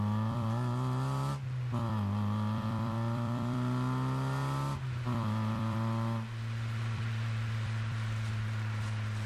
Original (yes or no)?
no